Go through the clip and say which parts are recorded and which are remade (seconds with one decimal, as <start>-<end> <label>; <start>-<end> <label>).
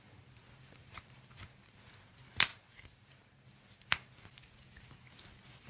0.0-0.8 recorded; 0.8-1.9 remade; 1.9-2.5 recorded; 2.5-3.8 remade; 3.8-5.7 recorded